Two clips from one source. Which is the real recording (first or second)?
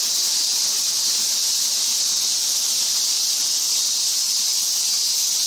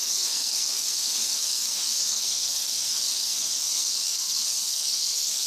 first